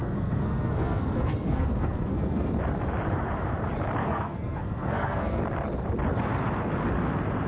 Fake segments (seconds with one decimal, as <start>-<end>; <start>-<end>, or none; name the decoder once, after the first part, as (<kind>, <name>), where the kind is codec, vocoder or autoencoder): 0.0-2.5 (codec, SNAC); 4.0-5.4